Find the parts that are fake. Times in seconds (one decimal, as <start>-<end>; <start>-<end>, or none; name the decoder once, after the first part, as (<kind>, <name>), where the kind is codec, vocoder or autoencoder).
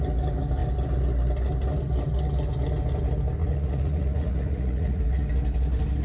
3.4-5.0 (vocoder, Vocos)